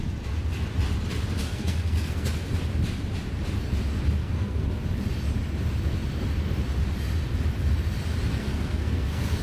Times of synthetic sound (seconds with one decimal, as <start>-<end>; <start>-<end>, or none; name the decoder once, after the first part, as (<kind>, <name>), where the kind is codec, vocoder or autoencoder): 1.4-2.4 (codec, SNAC); 4.2-4.7; 8.3-9.4